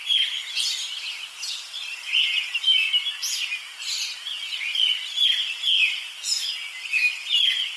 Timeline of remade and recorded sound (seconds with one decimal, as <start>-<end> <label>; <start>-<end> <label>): 0.0-7.8 recorded